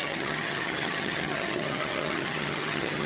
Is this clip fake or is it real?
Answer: fake